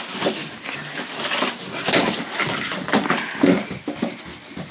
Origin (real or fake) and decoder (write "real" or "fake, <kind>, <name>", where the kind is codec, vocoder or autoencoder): real